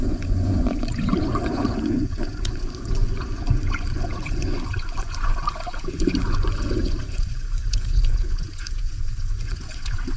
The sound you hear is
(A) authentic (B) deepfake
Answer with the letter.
B